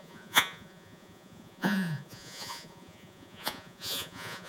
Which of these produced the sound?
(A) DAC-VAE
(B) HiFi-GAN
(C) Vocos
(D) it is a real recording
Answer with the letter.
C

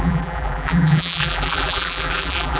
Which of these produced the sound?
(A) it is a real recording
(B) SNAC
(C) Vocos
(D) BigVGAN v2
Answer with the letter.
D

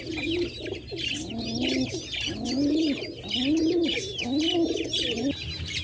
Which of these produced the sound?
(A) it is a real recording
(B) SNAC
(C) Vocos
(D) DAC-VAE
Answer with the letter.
A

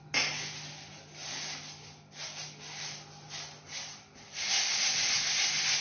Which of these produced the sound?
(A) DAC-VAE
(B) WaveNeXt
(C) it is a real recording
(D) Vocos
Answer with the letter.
C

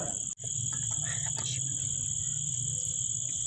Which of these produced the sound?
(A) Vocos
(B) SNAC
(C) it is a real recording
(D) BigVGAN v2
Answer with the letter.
C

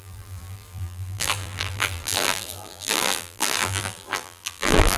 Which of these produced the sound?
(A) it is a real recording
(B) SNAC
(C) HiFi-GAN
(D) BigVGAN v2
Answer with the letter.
D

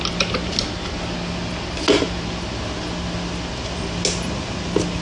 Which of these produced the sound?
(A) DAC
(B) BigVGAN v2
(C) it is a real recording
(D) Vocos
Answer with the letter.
C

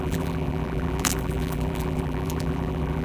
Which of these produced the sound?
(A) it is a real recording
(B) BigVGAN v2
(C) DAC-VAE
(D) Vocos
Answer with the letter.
B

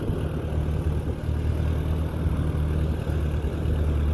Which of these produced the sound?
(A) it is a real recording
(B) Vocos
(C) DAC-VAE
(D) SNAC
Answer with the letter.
A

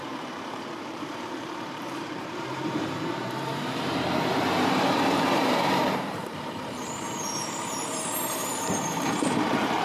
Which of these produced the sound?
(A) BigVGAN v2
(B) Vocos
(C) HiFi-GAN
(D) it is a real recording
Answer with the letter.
A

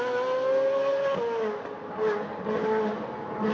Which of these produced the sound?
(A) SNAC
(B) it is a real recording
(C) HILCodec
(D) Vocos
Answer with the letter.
B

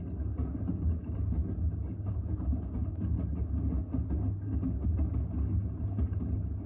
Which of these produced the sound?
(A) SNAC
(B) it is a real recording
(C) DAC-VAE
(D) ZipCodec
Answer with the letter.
B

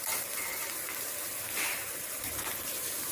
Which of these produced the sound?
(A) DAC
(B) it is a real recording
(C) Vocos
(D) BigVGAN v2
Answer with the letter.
B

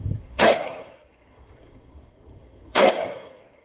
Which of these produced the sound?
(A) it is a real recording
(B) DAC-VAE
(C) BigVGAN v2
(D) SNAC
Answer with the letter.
D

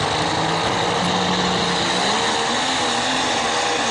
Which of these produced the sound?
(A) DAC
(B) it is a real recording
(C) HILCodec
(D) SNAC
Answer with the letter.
B